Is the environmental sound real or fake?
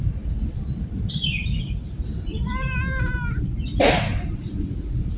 real